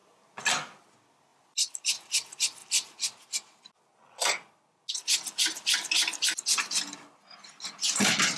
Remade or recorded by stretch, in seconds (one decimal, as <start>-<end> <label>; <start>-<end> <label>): 0.0-8.4 recorded